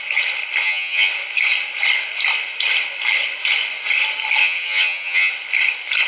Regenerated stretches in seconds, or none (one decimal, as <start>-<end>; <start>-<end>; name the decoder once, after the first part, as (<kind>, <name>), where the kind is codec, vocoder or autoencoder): 0.6-1.1 (vocoder, HiFi-GAN); 4.4-5.3